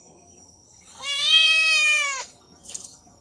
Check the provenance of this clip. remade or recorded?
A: remade